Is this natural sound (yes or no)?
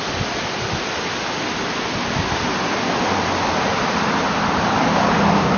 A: yes